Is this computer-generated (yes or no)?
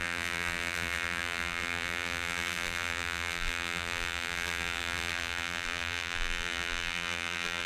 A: yes